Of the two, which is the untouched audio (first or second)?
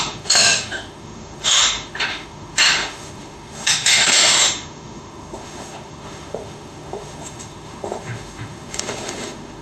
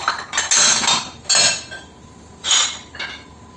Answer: second